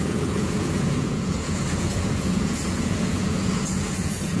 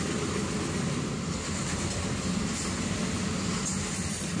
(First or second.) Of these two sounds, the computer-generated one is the first